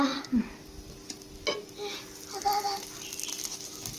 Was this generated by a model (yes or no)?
no